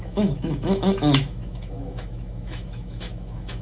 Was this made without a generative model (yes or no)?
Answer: no